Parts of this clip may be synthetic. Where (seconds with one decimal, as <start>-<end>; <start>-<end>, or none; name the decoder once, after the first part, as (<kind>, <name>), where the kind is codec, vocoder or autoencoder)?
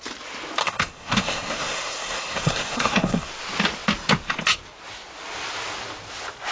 0.6-3.3 (codec, SNAC)